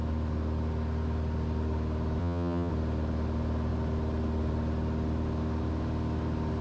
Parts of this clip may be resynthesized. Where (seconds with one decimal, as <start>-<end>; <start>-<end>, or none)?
2.2-2.7